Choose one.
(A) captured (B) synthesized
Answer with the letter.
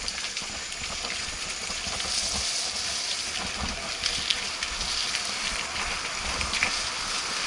A